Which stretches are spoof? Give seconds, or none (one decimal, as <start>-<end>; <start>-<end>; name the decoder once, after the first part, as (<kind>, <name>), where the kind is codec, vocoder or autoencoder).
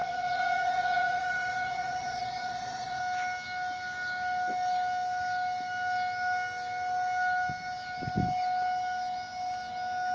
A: 0.0-3.0 (vocoder, Vocos)